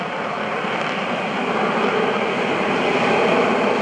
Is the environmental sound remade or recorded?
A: remade